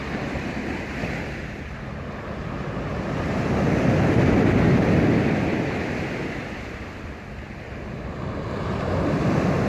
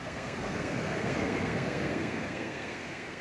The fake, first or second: second